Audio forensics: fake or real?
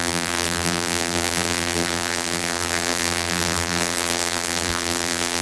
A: fake